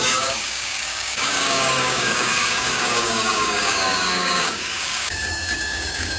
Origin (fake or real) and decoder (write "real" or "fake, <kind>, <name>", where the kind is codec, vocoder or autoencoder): fake, codec, DAC